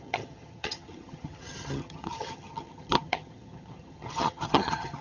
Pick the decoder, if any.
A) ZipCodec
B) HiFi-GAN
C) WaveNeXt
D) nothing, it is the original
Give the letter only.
B